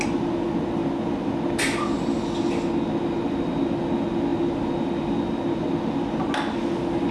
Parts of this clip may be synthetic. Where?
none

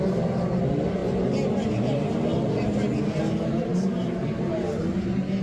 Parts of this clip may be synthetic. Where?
none

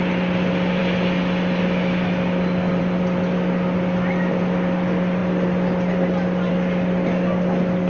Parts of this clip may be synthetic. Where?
none

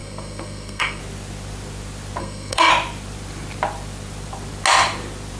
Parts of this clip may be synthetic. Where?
0.0-1.0 (codec, SNAC); 2.2-2.7

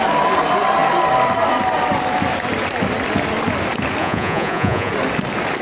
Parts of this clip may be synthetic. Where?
4.0-4.9 (vocoder, Vocos)

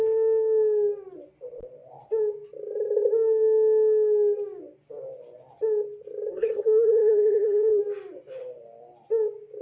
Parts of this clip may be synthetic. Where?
6.3-7.8 (codec, SNAC)